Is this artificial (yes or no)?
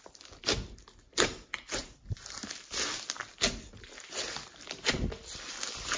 no